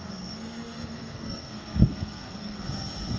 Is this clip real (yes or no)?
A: no